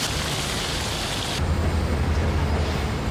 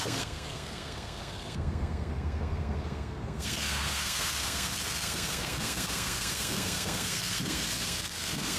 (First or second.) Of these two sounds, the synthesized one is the second